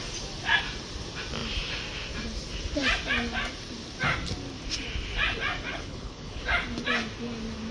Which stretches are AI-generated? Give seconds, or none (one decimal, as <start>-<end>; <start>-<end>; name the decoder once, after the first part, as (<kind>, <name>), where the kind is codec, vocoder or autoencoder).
5.7-6.4 (codec, HILCodec)